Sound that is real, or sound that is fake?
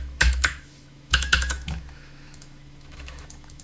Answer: fake